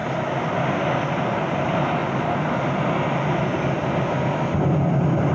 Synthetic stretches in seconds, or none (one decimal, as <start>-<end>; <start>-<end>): 1.0-2.0